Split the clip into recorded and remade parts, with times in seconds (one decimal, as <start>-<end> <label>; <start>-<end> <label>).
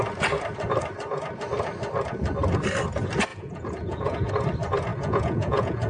0.0-3.3 recorded; 3.3-4.3 remade; 4.3-4.9 recorded; 4.9-5.9 remade